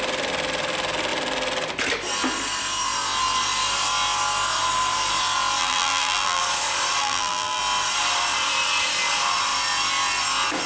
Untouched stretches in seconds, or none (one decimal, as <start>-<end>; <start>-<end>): 0.0-5.6; 6.4-7.0; 7.6-10.7